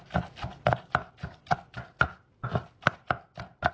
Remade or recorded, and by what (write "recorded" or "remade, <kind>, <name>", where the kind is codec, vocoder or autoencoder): recorded